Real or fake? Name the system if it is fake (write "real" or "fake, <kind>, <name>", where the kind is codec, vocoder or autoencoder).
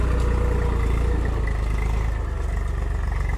real